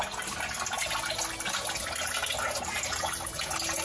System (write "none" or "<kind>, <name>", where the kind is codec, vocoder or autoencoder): none